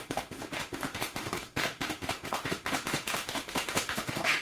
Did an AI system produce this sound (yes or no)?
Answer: yes